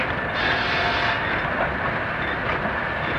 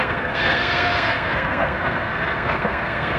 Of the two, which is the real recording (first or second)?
first